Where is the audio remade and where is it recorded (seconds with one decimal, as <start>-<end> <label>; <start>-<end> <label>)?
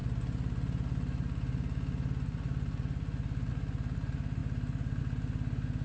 0.0-5.8 recorded